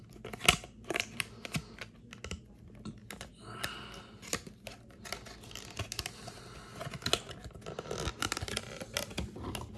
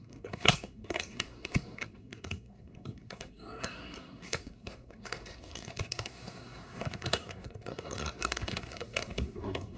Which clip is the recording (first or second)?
first